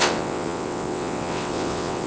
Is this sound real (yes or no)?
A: no